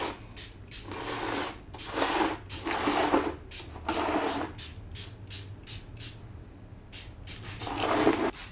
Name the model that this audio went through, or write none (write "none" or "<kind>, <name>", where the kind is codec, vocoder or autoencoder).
none